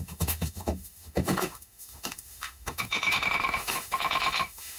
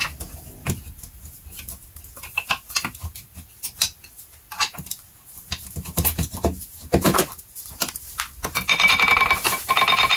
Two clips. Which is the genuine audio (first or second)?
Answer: second